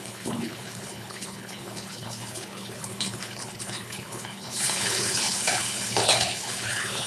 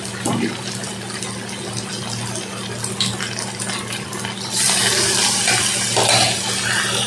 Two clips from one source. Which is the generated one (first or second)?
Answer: first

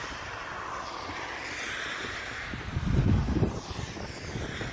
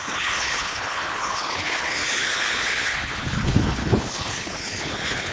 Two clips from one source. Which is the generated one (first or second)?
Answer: second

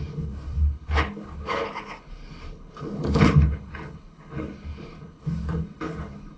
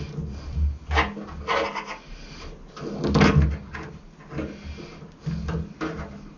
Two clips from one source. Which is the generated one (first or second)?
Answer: first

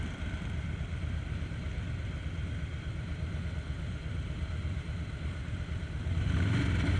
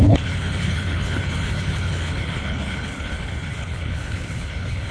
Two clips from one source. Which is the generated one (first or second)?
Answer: second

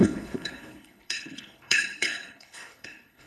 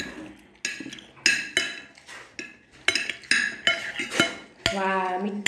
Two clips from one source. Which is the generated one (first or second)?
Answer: first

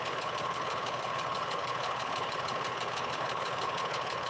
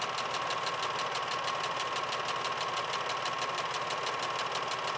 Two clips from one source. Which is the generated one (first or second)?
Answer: first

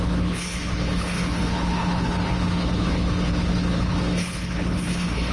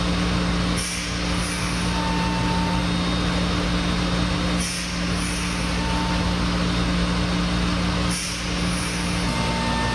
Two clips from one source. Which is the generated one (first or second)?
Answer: first